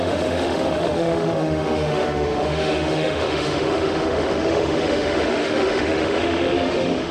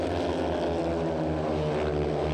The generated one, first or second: first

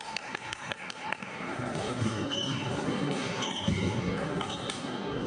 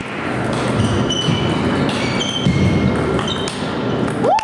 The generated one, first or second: first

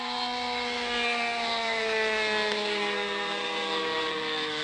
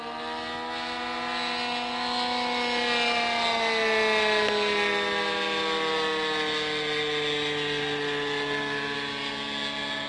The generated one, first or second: first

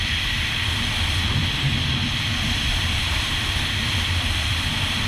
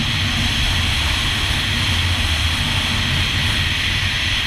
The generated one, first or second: first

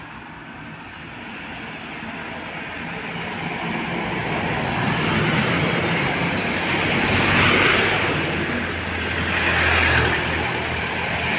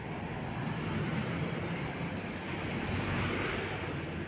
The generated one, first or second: second